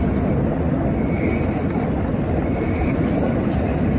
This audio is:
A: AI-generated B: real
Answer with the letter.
B